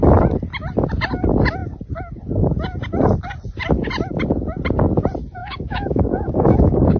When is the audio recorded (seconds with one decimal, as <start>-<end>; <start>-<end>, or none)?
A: 0.0-5.4